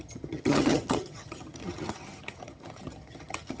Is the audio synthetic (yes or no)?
yes